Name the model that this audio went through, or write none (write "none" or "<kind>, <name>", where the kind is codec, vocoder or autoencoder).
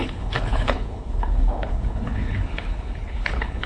codec, HILCodec